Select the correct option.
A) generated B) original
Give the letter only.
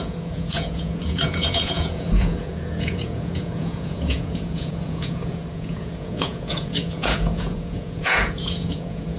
A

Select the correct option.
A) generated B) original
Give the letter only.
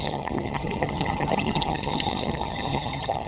A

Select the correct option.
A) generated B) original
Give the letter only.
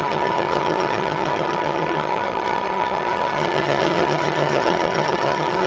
A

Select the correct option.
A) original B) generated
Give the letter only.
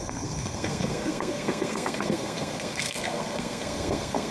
B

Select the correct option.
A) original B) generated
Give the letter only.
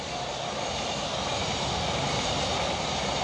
A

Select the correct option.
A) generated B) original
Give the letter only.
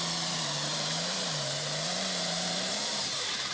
A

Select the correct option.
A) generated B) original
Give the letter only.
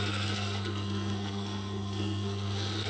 A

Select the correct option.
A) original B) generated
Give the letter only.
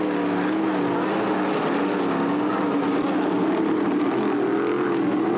A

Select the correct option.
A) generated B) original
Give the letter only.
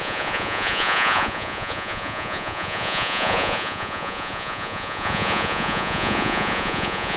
A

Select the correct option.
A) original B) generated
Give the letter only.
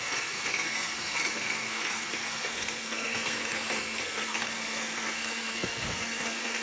B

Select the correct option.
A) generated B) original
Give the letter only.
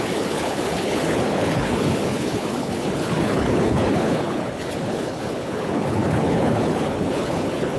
A